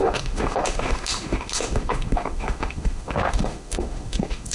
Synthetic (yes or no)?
yes